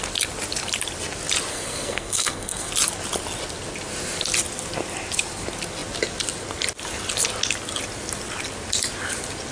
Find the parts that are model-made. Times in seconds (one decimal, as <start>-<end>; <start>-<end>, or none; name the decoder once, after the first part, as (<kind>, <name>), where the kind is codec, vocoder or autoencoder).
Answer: 1.5-2.7 (codec, SNAC)